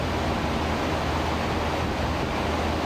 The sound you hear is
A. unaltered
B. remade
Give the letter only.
A